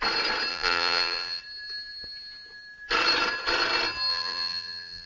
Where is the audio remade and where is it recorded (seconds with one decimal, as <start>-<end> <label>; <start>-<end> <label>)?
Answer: 0.0-0.5 recorded; 0.5-1.4 remade; 1.4-4.1 recorded; 4.1-5.1 remade

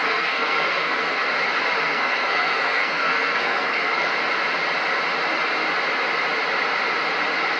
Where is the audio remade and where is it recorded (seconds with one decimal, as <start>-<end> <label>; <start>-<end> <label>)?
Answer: 0.0-1.3 remade; 1.3-1.8 recorded; 1.8-4.1 remade; 4.1-7.6 recorded